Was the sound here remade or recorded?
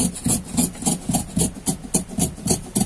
recorded